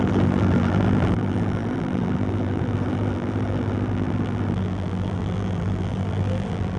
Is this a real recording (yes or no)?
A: no